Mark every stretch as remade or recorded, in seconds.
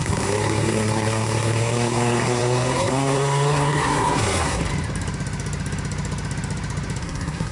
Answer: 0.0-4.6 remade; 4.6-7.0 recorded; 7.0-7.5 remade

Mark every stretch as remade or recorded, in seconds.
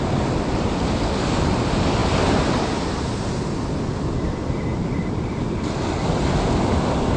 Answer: 0.0-7.2 recorded